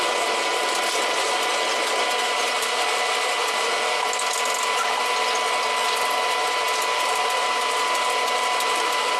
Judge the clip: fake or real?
real